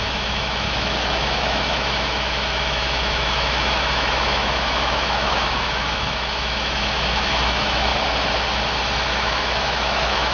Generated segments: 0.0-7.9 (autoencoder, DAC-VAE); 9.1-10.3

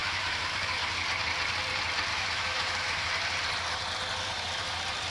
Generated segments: 0.0-0.8 (autoencoder, DAC-VAE); 2.1-3.1

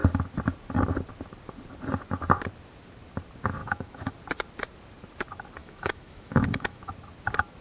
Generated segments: 3.6-4.1 (autoencoder, DAC-VAE); 5.6-6.9

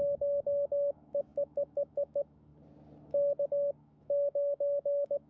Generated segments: 0.0-2.5 (autoencoder, DAC-VAE); 3.8-5.3

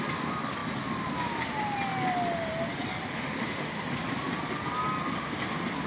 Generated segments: 3.1-3.9 (autoencoder, DAC-VAE)

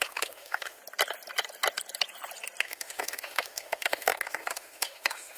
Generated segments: 0.0-0.8 (autoencoder, DAC-VAE); 2.6-5.4